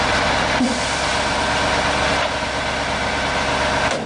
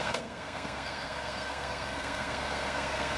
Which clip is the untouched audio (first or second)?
first